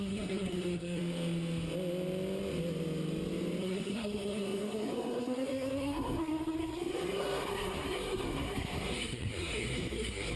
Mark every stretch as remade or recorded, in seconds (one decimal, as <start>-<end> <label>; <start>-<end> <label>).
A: 0.0-1.0 remade; 1.0-3.6 recorded; 3.6-10.4 remade